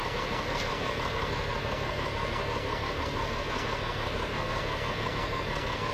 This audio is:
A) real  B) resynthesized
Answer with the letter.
B